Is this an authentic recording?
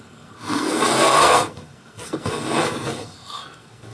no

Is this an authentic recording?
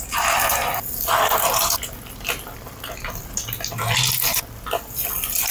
yes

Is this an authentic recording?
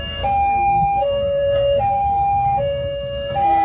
no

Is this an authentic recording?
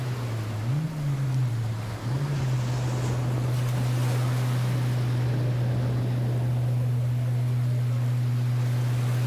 yes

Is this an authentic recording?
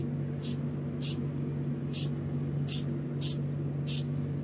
yes